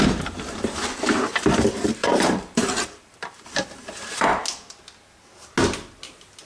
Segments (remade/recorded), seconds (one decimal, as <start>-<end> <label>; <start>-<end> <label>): 0.0-4.3 remade; 4.3-6.5 recorded